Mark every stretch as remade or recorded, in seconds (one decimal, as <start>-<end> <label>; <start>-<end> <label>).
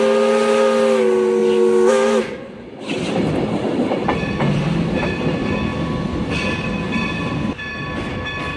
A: 0.0-8.6 recorded